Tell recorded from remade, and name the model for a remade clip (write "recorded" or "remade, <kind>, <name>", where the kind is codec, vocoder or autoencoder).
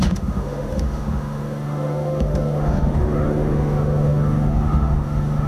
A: remade, autoencoder, DAC-VAE